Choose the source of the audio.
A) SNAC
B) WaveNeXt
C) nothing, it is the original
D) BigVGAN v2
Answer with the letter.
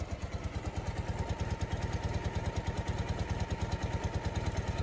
C